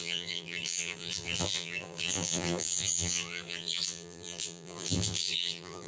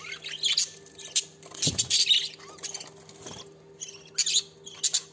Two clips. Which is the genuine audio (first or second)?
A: second